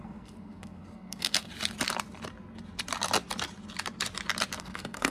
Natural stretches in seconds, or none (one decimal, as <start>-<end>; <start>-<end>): 1.5-4.6